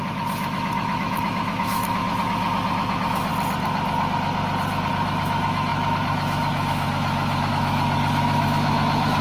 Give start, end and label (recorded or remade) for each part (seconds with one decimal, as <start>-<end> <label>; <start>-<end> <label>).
0.0-3.3 remade; 3.3-4.9 recorded; 4.9-9.2 remade